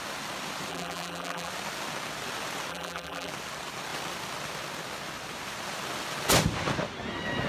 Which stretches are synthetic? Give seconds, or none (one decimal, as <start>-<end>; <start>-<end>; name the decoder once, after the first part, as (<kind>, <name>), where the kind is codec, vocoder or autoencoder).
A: 0.7-1.5 (vocoder, BigVGAN v2); 2.7-3.3